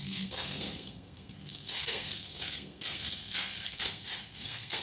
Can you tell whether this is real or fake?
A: fake